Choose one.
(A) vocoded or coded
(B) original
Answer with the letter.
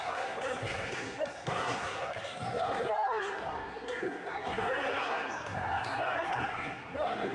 A